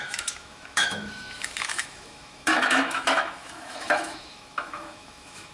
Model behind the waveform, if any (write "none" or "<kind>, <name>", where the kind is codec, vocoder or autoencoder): autoencoder, DAC-VAE